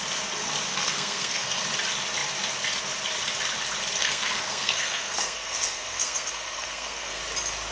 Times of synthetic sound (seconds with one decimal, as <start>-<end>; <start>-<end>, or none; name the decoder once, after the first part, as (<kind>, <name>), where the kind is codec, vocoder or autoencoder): 0.7-1.6 (codec, SNAC); 4.0-7.2